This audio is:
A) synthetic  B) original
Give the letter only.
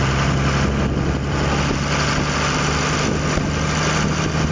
B